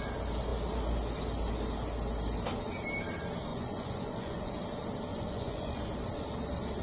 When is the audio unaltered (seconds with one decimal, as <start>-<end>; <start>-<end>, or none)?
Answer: 0.0-3.5; 4.5-5.1; 5.8-6.8